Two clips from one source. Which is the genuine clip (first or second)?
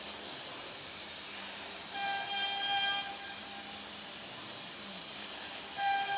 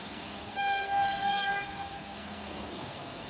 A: first